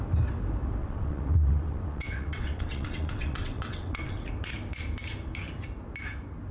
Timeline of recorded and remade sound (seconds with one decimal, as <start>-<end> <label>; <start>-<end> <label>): 0.0-0.8 recorded; 0.8-4.3 remade; 4.3-6.5 recorded